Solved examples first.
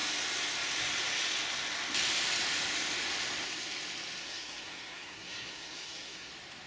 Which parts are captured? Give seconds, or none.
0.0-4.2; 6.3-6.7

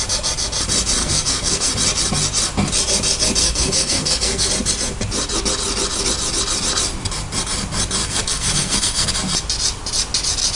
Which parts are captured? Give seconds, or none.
0.0-1.0; 1.7-3.4; 4.5-8.0; 9.1-10.6

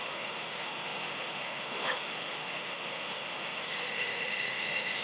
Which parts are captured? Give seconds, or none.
none

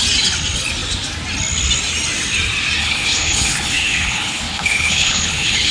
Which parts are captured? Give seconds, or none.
0.0-2.8